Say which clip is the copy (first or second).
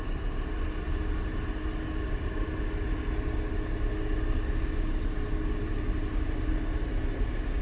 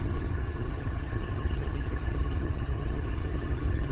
second